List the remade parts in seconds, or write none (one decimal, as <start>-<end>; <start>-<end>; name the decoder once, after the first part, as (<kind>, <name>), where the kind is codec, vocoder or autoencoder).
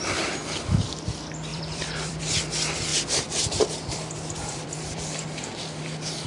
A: 1.5-2.2 (vocoder, BigVGAN v2); 2.9-6.3